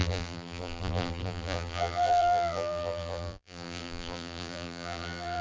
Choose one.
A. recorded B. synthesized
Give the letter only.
B